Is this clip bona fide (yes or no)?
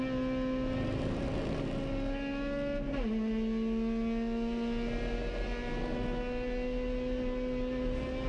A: yes